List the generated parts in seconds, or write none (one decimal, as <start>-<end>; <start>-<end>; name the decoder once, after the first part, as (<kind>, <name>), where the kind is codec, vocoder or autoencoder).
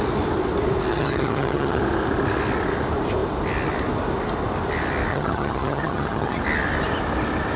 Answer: 0.9-1.8 (vocoder, HiFi-GAN); 5.1-6.4